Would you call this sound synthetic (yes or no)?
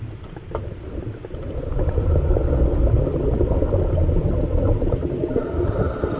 no